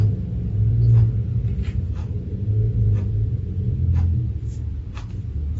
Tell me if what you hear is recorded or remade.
recorded